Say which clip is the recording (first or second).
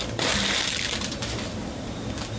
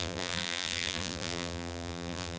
first